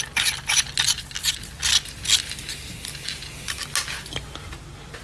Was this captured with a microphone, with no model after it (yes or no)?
yes